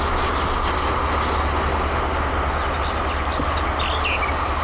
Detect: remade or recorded recorded